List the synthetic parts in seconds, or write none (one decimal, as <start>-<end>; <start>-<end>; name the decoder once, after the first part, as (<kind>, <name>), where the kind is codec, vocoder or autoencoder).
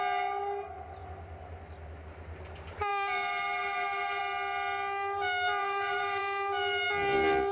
2.9-4.2 (vocoder, BigVGAN v2); 5.6-6.2